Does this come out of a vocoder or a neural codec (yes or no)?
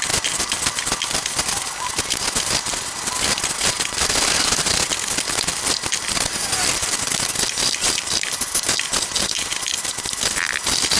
no